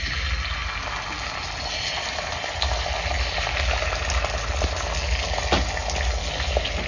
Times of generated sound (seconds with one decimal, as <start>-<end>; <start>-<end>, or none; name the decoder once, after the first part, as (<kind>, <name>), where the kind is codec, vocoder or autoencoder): none